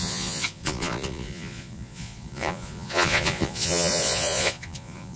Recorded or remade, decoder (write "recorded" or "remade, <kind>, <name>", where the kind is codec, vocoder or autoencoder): remade, vocoder, Vocos